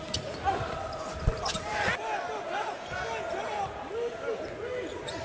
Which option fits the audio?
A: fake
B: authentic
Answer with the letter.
B